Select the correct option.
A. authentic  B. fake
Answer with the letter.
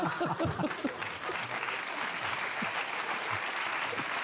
A